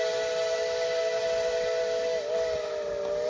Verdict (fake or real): real